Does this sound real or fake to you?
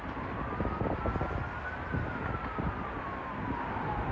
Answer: real